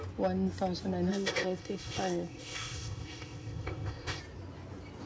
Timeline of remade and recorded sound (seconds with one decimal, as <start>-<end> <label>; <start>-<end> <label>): 0.0-1.1 recorded; 1.1-4.2 remade; 4.2-5.1 recorded